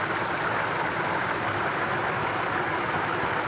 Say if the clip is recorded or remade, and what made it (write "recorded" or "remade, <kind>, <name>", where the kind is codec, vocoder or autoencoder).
recorded